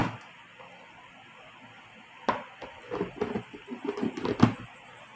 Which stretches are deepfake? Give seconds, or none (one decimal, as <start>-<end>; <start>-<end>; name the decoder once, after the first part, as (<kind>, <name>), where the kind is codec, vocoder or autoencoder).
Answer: none